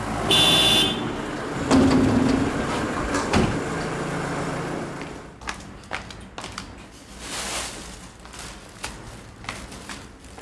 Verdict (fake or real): real